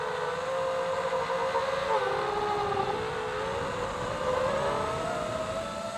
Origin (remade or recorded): recorded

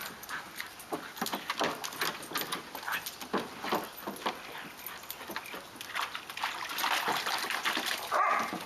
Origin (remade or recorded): recorded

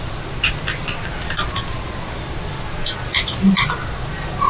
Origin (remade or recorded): recorded